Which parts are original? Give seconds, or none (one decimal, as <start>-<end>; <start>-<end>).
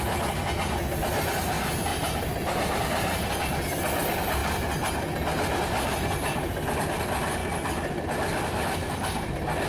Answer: 0.0-1.9; 3.4-9.7